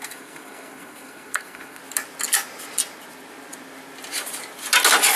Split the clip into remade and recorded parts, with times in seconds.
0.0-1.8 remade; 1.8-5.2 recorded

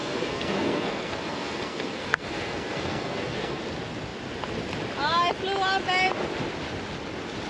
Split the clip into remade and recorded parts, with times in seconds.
0.0-3.6 remade; 3.6-7.5 recorded

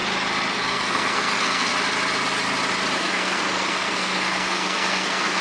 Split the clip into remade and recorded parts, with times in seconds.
0.0-0.5 recorded; 0.5-1.7 remade; 1.7-3.0 recorded; 3.0-5.4 remade